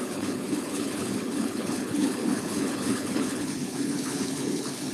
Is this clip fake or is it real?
fake